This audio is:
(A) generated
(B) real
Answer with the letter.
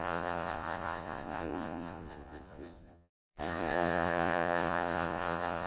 A